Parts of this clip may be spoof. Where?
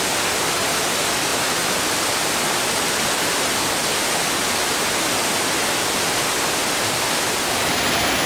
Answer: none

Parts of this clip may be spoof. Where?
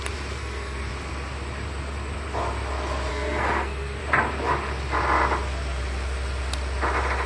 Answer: 0.4-0.9 (codec, SNAC); 3.1-4.0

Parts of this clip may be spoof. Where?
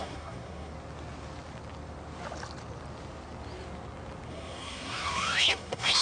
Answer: 0.0-0.7 (codec, SNAC); 4.3-6.0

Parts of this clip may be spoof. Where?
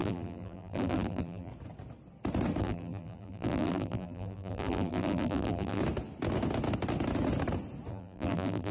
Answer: 0.0-1.5 (vocoder, BigVGAN v2); 2.6-5.8; 7.9-8.7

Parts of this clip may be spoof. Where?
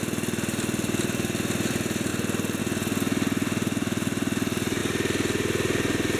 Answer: 0.0-2.1 (vocoder, BigVGAN v2); 2.6-4.8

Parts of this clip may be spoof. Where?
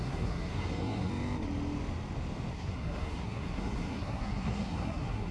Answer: 0.0-1.1 (codec, SNAC); 2.5-5.3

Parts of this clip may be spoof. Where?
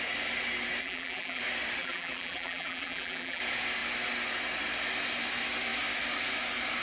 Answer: 0.8-1.4 (vocoder, BigVGAN v2); 1.8-3.4